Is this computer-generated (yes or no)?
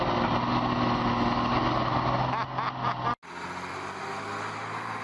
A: no